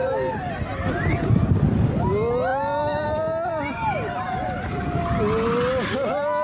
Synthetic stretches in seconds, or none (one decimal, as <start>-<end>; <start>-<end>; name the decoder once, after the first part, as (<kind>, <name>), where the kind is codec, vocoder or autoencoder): none